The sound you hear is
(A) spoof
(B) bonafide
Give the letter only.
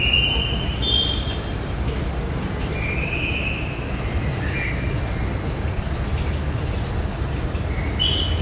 B